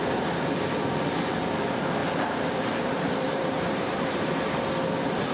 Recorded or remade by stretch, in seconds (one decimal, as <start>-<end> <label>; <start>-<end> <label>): 0.0-0.9 remade; 0.9-2.0 recorded; 2.0-4.7 remade; 4.7-5.3 recorded